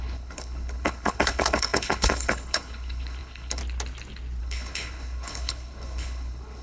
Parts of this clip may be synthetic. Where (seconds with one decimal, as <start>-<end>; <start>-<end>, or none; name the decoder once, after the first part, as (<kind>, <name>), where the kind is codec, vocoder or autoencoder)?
0.0-3.6 (codec, HILCodec); 4.4-6.6